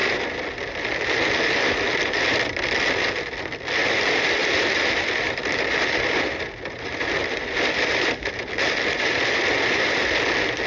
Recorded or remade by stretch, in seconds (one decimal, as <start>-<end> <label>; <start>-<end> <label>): 0.0-4.4 recorded; 4.4-9.1 remade; 9.1-10.7 recorded

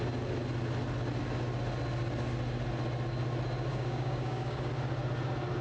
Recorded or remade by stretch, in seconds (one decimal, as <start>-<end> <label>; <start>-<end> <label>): 0.0-3.7 recorded; 3.7-4.7 remade; 4.7-5.6 recorded

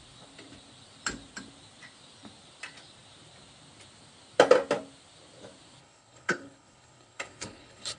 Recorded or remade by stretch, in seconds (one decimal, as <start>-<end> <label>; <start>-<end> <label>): 0.0-5.8 recorded; 5.8-8.0 remade

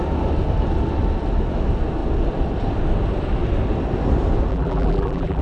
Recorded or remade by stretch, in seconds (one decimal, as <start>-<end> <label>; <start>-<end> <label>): 0.0-4.5 recorded; 4.5-5.4 remade

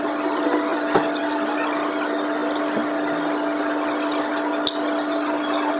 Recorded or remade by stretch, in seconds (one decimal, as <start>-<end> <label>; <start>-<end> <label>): 0.0-5.8 recorded

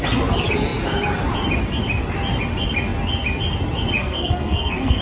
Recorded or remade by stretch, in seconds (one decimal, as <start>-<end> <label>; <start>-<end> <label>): 0.0-4.0 recorded; 4.0-5.0 remade